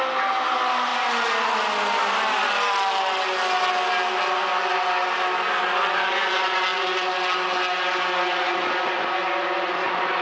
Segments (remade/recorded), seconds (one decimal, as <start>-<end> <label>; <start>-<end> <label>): 0.0-10.2 recorded